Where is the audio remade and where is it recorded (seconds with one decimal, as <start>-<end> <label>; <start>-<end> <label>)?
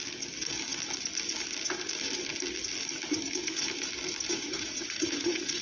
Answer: 0.0-4.3 recorded; 4.3-5.6 remade